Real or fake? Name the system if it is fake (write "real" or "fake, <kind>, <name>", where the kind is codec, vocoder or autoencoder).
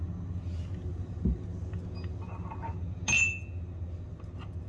real